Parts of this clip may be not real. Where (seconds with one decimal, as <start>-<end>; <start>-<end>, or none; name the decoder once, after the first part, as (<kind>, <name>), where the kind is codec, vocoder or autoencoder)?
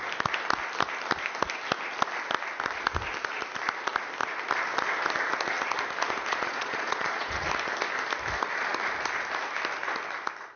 6.3-7.5 (vocoder, Vocos)